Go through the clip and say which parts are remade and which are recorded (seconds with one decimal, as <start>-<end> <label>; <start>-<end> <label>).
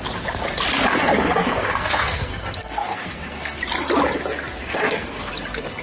0.0-0.9 recorded; 0.9-3.6 remade; 3.6-4.6 recorded; 4.6-5.3 remade; 5.3-5.8 recorded